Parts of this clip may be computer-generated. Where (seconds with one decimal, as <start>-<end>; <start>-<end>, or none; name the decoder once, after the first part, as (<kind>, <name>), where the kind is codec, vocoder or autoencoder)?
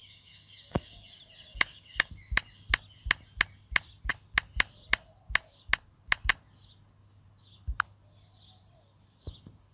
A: 0.0-1.1 (codec, DAC); 1.5-2.1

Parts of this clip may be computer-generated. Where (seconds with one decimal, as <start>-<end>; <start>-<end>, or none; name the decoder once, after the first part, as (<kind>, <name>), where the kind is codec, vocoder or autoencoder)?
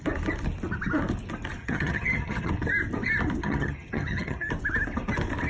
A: 1.6-2.5 (vocoder, HiFi-GAN); 3.4-4.5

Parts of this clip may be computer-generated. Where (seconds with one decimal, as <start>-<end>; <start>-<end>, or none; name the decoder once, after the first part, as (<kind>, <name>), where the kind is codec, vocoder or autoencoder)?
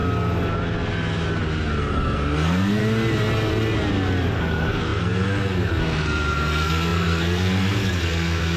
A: 1.8-2.8 (codec, SNAC); 4.3-8.6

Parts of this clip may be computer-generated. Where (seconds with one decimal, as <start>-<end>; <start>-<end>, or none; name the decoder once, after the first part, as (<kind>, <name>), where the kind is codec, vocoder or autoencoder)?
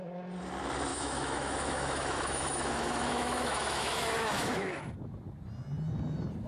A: 0.9-4.8 (autoencoder, DAC-VAE)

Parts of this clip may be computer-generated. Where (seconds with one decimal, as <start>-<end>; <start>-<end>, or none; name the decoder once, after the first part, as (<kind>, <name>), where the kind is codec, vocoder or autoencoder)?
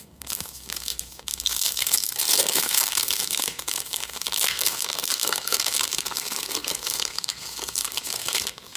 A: 0.0-8.8 (codec, SNAC)